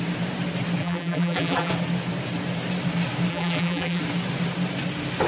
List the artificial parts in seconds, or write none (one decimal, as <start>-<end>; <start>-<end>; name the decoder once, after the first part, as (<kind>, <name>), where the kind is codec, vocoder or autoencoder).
0.8-1.7 (vocoder, BigVGAN v2); 3.3-4.0